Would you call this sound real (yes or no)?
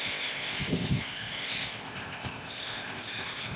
no